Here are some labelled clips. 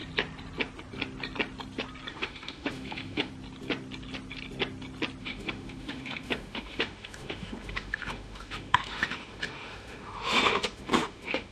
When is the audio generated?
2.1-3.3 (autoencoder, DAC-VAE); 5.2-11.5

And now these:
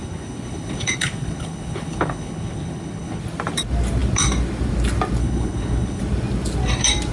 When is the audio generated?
0.0-3.2 (codec, HILCodec); 5.2-6.0

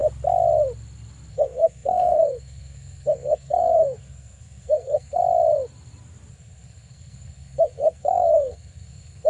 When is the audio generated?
1.3-5.2 (codec, SNAC); 6.3-9.3

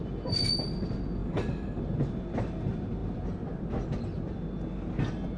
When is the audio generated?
1.2-1.8 (codec, DAC)